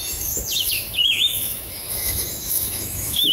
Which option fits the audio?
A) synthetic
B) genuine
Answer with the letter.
A